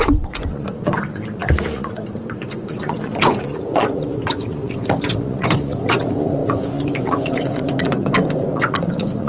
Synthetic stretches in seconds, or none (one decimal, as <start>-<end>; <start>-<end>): 0.0-9.3

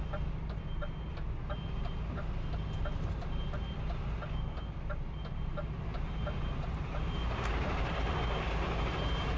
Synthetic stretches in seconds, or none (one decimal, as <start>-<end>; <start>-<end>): 5.9-8.0

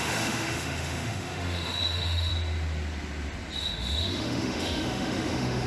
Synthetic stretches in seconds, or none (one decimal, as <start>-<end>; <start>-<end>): 0.0-2.3; 3.6-5.7